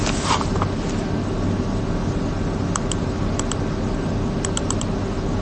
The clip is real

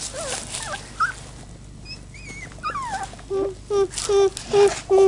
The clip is real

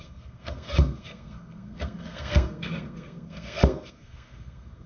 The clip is fake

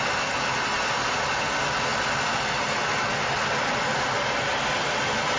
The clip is real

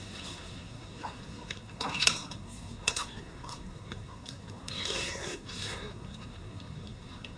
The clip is fake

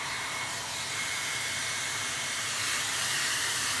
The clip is fake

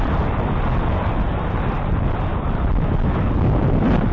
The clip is real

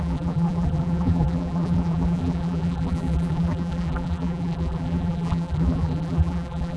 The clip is fake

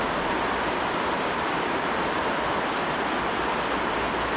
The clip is real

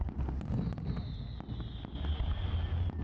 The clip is real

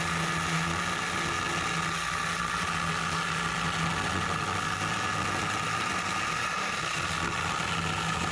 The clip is real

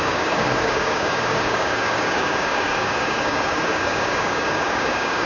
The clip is fake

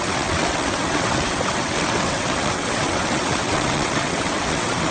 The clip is fake